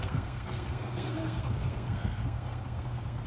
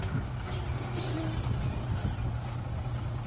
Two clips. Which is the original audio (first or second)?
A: second